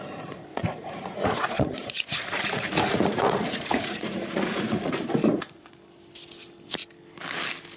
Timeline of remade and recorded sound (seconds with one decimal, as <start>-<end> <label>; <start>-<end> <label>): 0.0-0.5 recorded; 0.5-4.9 remade; 4.9-7.8 recorded